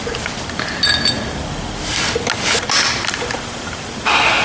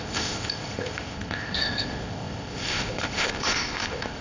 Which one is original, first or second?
first